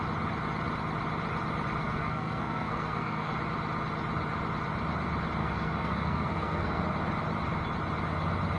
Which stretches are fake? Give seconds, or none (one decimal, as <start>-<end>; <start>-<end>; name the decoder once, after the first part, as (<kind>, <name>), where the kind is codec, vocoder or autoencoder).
1.8-3.3 (codec, SNAC); 5.4-6.8